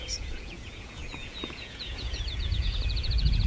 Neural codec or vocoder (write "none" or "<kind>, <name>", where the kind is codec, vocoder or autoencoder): vocoder, Vocos